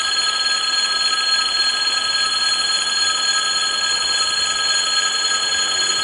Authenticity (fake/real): real